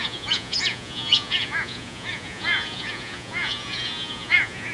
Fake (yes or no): yes